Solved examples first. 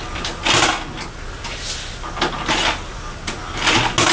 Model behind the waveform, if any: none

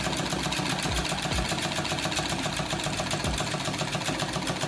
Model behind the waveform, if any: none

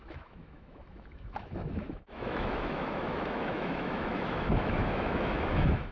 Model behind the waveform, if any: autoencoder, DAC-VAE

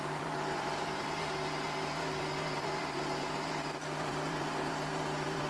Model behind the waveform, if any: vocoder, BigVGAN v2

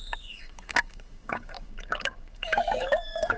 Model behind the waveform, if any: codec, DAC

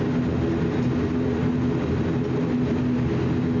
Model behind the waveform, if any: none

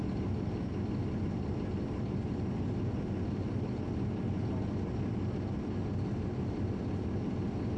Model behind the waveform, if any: none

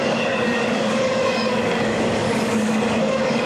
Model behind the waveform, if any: codec, DAC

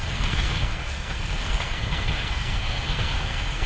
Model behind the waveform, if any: codec, SNAC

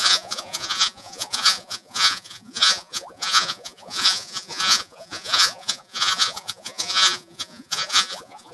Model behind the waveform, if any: vocoder, Vocos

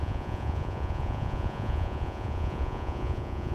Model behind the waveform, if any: vocoder, Vocos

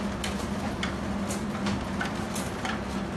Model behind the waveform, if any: none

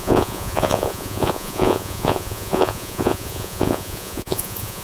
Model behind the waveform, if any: vocoder, Vocos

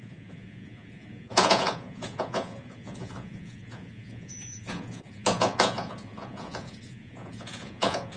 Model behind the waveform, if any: vocoder, Vocos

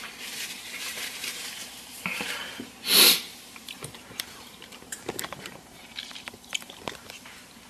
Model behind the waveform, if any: vocoder, BigVGAN v2